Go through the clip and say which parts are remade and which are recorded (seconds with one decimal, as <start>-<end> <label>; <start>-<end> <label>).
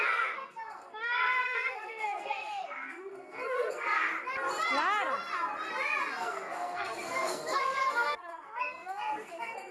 0.0-4.1 remade; 4.1-6.2 recorded; 6.2-9.7 remade